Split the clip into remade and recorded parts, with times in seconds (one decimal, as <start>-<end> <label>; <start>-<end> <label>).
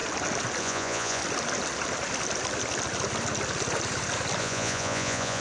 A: 0.0-0.6 recorded; 0.6-1.2 remade; 1.2-4.4 recorded; 4.4-5.4 remade